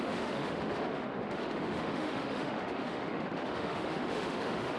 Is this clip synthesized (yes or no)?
yes